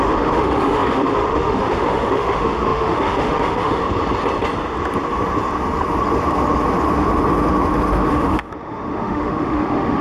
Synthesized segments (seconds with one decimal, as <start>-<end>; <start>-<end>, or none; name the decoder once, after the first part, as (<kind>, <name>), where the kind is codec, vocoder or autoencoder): 0.0-3.8 (autoencoder, DAC-VAE); 8.1-10.0